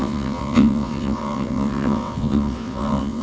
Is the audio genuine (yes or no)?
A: no